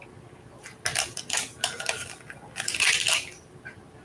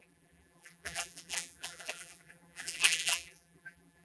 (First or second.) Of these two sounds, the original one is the first